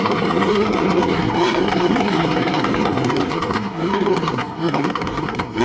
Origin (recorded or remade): remade